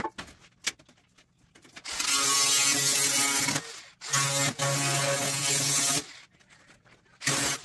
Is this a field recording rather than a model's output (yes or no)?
yes